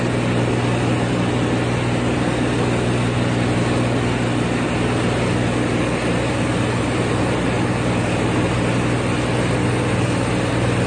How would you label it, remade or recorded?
recorded